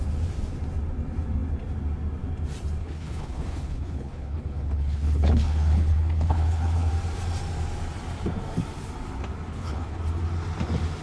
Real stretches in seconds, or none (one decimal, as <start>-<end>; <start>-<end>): 0.0-2.8; 6.9-9.5; 10.0-11.0